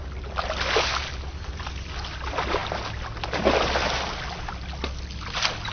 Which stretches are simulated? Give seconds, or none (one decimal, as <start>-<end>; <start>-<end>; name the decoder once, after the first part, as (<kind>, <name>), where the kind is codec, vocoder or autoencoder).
none